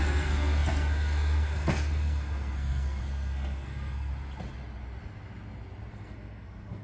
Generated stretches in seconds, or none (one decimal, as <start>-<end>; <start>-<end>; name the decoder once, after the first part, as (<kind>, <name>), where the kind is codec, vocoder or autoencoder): 0.0-4.1 (codec, SNAC); 5.9-6.8